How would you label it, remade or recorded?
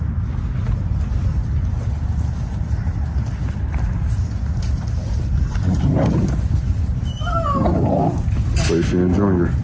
recorded